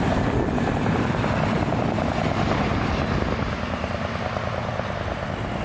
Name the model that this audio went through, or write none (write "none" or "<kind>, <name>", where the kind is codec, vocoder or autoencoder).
none